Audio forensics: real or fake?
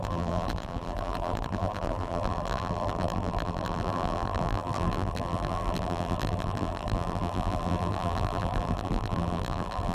fake